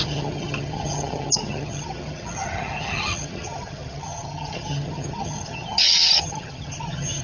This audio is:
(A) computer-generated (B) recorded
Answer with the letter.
A